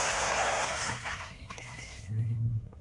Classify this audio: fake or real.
fake